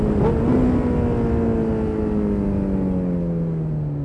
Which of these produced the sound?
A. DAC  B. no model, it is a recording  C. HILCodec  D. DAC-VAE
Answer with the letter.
B